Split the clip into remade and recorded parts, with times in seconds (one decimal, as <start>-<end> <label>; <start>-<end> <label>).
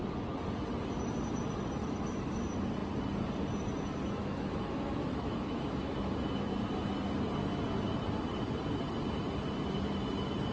0.0-1.8 recorded; 1.8-2.4 remade; 2.4-4.2 recorded; 4.2-6.1 remade; 6.1-10.5 recorded